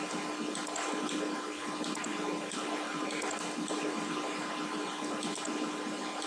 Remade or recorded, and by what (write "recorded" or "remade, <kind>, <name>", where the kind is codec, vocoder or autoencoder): recorded